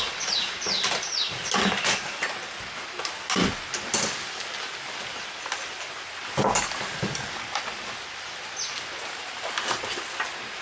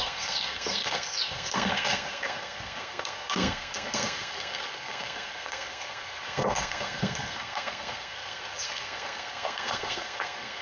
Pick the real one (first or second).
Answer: first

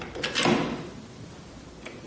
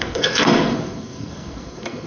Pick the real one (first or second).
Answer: first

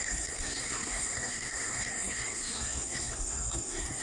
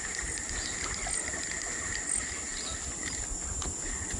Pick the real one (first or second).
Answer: second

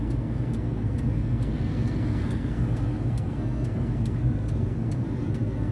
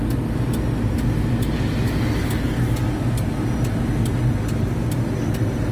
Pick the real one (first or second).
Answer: second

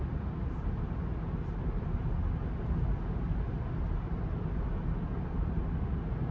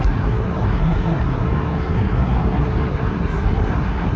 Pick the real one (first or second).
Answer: first